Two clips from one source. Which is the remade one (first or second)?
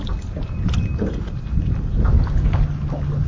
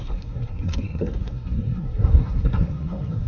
second